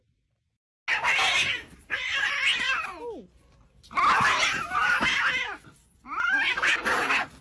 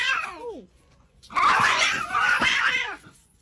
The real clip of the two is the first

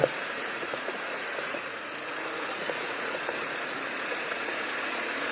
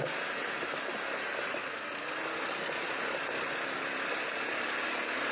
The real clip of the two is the second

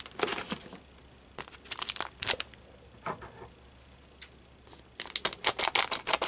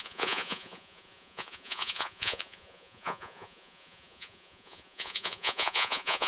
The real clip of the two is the first